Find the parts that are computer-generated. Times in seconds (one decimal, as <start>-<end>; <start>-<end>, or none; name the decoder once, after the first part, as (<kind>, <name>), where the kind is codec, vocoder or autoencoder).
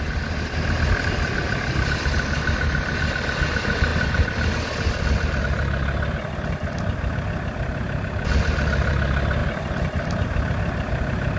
9.4-11.4 (vocoder, BigVGAN v2)